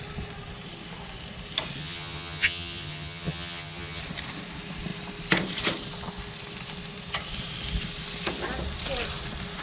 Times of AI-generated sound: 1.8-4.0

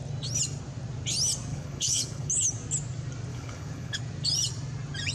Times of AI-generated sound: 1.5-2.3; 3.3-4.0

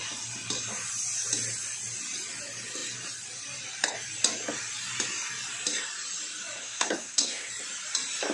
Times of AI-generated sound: 6.6-7.5